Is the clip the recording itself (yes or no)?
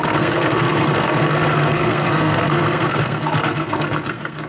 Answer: no